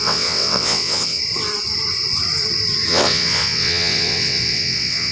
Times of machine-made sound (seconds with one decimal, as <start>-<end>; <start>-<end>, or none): 0.0-1.2; 2.9-5.1